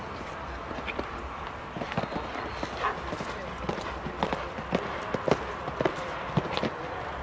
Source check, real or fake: real